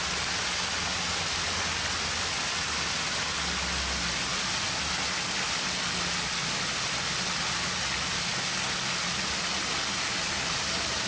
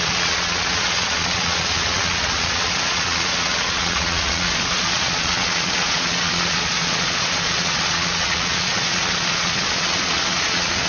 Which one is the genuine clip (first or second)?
first